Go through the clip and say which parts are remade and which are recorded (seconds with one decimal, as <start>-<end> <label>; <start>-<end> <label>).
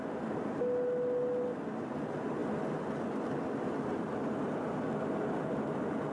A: 0.0-6.1 recorded